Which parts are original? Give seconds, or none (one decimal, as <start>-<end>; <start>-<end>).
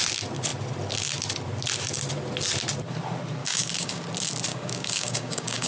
0.0-3.4; 4.0-4.5